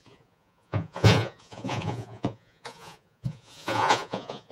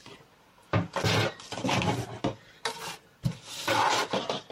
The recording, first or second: second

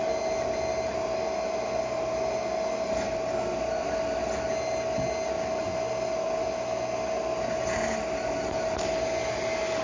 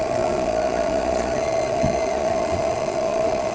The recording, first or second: first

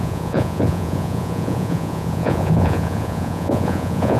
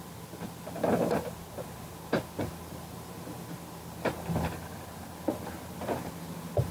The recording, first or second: second